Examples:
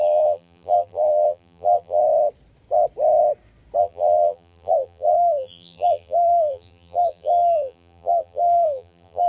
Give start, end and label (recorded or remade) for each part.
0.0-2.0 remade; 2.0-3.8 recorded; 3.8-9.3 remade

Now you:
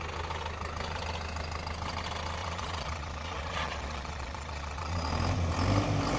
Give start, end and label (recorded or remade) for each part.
0.0-2.4 recorded; 2.4-5.1 remade; 5.1-6.2 recorded

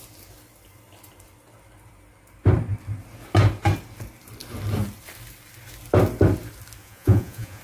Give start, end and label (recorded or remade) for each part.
0.0-6.8 recorded; 6.8-7.6 remade

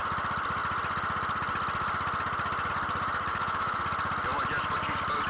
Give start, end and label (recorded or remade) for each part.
0.0-3.3 recorded; 3.3-3.8 remade; 3.8-5.3 recorded